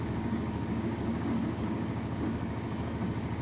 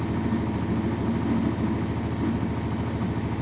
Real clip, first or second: second